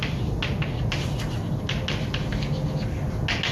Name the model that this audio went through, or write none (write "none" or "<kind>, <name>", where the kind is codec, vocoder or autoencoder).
none